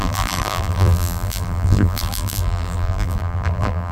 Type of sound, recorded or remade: remade